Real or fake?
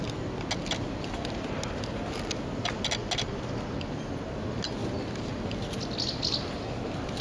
real